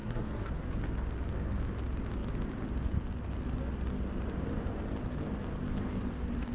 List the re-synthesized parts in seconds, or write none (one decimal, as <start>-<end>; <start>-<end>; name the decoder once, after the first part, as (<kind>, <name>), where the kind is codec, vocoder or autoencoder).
0.0-0.5 (codec, SNAC)